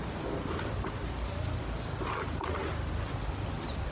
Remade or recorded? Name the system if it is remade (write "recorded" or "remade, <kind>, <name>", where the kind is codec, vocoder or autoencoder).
recorded